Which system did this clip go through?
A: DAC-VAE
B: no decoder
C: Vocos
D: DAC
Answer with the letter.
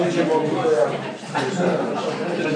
B